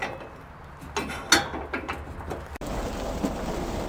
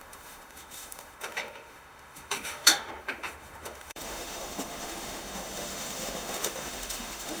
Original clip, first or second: first